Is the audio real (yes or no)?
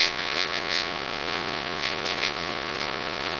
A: no